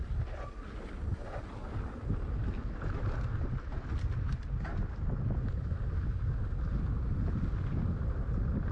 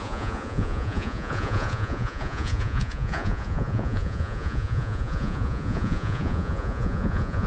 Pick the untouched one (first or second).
first